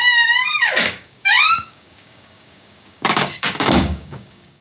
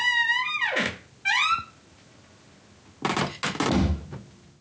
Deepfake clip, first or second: first